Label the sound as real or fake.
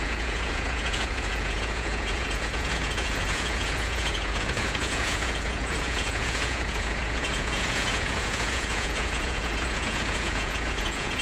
fake